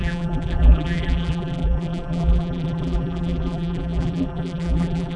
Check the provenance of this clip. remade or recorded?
remade